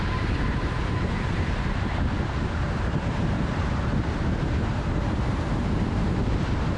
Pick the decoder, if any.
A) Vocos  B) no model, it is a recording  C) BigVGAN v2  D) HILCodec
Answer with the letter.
C